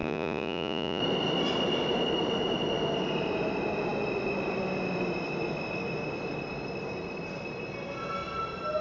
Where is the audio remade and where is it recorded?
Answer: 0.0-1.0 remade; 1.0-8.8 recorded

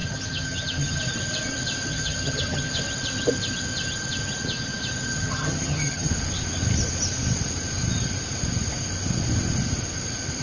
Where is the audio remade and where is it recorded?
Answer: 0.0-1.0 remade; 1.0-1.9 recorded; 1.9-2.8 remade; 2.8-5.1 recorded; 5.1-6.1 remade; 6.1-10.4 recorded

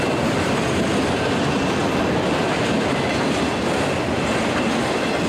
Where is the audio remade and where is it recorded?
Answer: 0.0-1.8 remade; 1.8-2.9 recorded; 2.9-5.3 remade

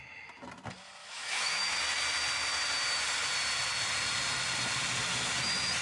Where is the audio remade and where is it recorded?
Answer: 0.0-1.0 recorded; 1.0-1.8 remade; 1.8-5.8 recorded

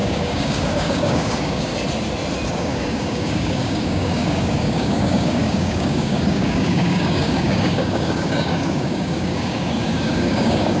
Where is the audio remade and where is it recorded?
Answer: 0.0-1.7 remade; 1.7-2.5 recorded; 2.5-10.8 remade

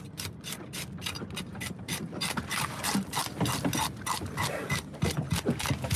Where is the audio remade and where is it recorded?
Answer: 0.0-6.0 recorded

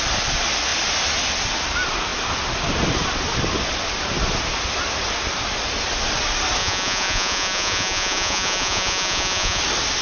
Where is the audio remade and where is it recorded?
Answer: 0.0-6.6 recorded; 6.6-9.6 remade; 9.6-10.0 recorded

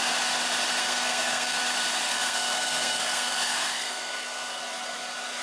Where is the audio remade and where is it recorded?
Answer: 0.0-0.8 recorded; 0.8-1.6 remade; 1.6-2.1 recorded; 2.1-4.6 remade; 4.6-5.4 recorded